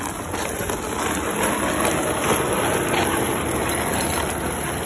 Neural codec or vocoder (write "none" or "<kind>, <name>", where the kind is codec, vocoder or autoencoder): none